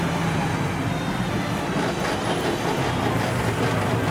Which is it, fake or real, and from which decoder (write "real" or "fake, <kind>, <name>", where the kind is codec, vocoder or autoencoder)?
real